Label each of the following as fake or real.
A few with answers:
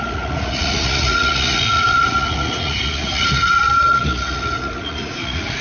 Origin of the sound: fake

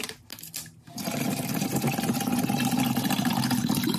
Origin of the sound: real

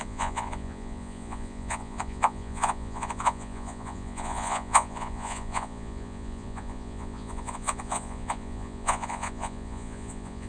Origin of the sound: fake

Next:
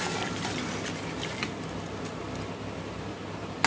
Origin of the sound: real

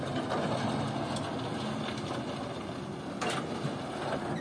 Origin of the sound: real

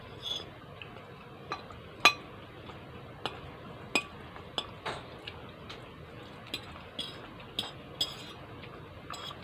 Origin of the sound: real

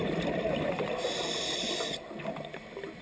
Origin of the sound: real